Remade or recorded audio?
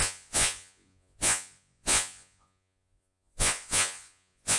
remade